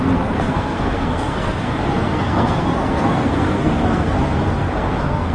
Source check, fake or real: fake